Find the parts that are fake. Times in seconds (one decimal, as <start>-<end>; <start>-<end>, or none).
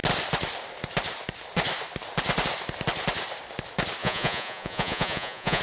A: 4.0-5.6